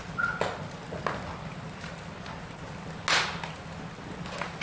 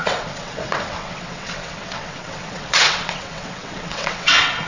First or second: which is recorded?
first